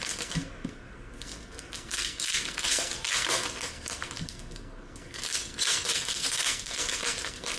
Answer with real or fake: fake